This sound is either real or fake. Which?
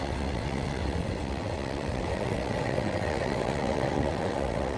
fake